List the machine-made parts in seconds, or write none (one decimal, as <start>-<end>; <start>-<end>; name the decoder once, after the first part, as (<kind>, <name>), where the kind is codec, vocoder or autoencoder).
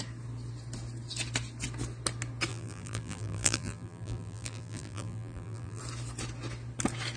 2.5-5.8 (vocoder, BigVGAN v2)